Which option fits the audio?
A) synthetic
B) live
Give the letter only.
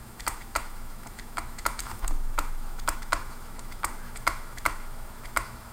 A